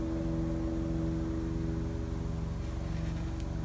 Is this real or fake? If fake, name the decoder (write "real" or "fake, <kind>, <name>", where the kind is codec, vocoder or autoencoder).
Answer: real